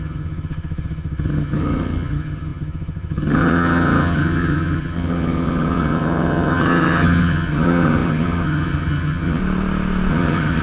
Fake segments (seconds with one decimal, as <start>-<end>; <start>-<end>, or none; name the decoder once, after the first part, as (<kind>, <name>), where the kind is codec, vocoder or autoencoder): 0.0-9.4 (vocoder, HiFi-GAN); 10.1-10.6